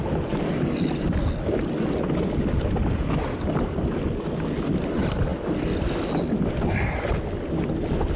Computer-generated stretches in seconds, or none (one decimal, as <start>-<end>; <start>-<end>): none